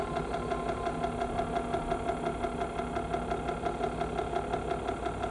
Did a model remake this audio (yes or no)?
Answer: no